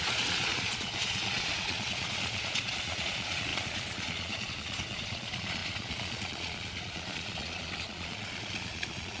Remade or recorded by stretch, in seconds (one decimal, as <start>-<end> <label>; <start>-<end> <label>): 0.0-9.2 remade